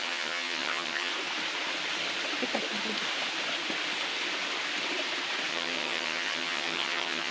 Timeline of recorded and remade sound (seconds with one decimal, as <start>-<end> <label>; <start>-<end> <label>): 0.0-1.1 remade; 1.1-5.5 recorded; 5.5-7.3 remade